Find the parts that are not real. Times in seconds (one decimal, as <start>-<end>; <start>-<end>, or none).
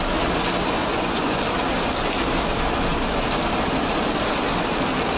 0.8-1.4